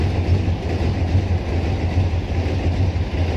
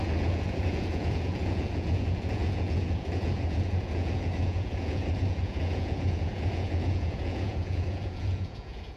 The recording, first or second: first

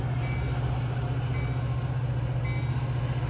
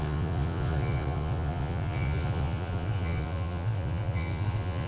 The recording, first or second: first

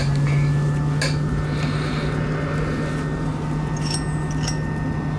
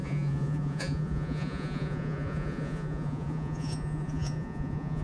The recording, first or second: first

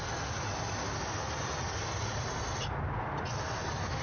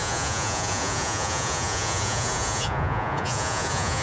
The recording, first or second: first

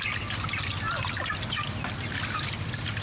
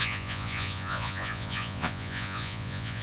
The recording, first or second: first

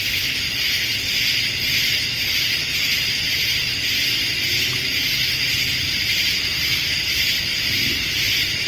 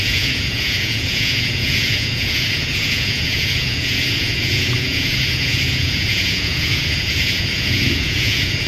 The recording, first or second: first